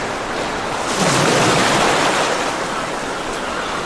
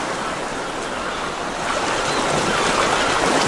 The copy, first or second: first